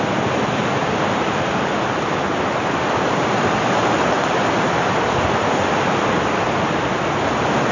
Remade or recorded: recorded